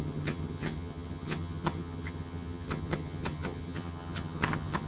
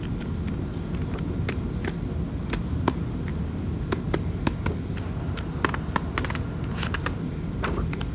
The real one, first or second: second